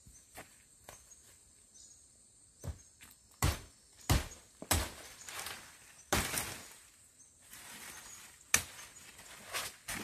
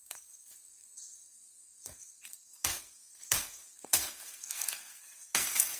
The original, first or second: first